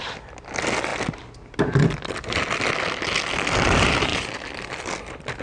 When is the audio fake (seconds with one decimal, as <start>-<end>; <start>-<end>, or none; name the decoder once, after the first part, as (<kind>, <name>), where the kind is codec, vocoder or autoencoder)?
none